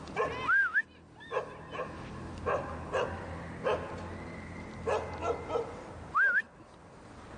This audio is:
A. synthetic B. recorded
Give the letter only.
B